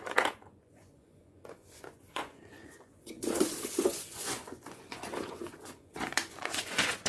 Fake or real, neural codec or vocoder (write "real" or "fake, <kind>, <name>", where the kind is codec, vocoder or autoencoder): fake, vocoder, Vocos